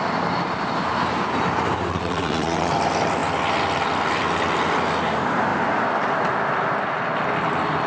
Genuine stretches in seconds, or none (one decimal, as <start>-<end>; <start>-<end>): 0.0-1.9; 2.7-7.9